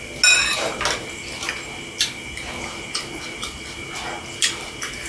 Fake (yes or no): no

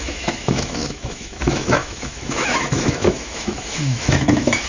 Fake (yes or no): yes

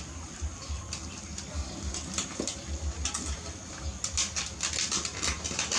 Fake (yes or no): no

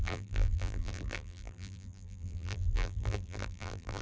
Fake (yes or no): yes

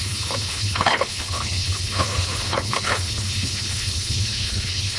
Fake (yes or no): yes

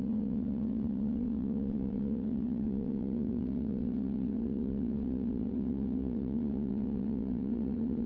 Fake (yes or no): yes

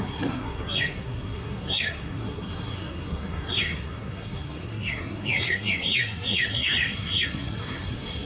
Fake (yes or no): yes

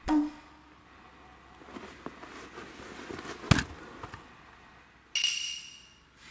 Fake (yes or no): no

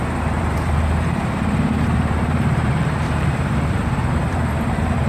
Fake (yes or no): yes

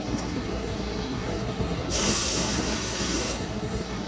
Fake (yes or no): yes